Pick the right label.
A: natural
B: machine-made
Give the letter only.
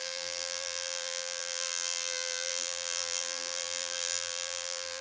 B